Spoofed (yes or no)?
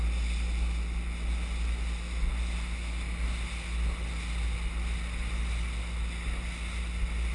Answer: no